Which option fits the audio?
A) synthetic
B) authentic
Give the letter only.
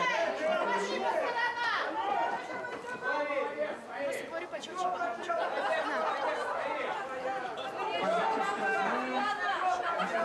B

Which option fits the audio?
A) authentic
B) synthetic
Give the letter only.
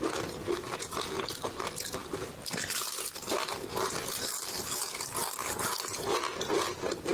A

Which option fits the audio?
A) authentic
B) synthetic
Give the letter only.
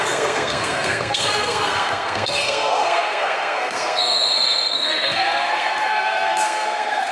B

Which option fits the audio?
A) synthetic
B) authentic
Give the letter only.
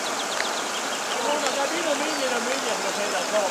B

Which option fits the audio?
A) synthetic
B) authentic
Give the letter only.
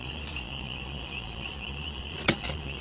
A